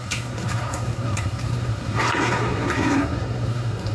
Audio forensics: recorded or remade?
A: remade